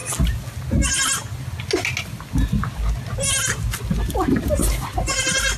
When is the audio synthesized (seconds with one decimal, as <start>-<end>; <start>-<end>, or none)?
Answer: none